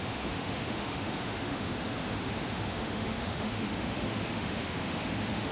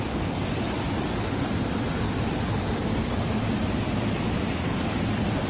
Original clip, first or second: second